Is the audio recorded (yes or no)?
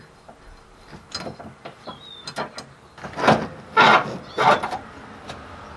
yes